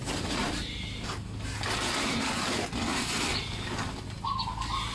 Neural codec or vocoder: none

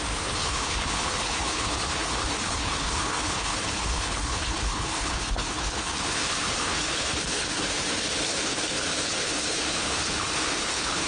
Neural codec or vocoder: codec, HILCodec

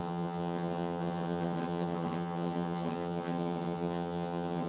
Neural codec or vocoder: vocoder, HiFi-GAN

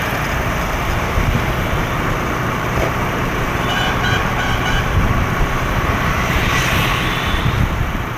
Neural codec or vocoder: vocoder, BigVGAN v2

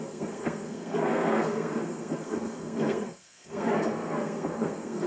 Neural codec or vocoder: codec, SNAC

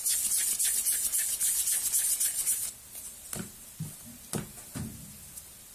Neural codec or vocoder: none